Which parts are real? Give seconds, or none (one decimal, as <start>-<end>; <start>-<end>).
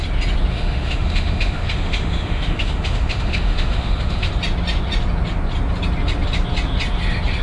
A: 0.0-0.5; 4.3-7.4